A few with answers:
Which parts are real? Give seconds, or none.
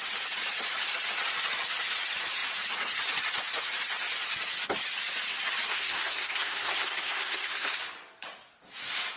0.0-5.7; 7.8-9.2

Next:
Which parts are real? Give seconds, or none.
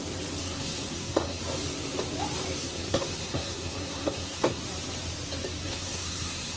0.0-0.4; 1.4-2.6; 4.6-5.6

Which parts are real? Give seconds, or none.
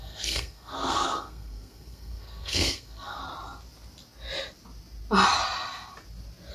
3.2-6.5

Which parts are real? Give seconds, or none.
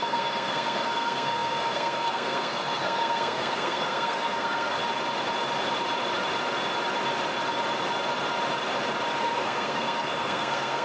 4.8-9.2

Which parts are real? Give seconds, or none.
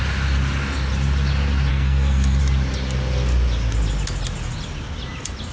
0.0-1.7; 2.4-5.5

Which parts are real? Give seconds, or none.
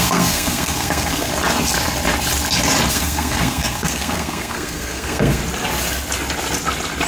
1.3-2.9; 5.4-7.1